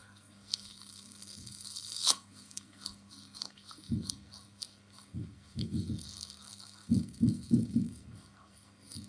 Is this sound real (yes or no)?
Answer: no